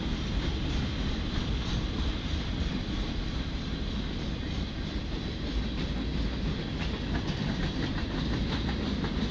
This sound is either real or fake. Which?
real